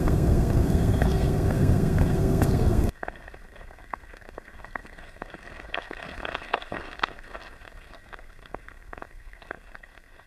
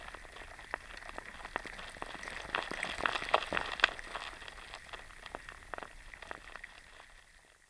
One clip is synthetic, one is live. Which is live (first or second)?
second